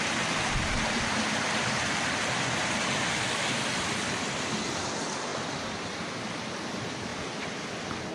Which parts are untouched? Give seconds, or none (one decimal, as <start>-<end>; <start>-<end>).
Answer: 0.0-5.3; 6.5-8.1